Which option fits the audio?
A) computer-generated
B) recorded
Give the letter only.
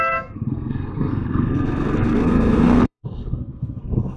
A